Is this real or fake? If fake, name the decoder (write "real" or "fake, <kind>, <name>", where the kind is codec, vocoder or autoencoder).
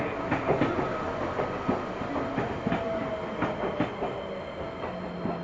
real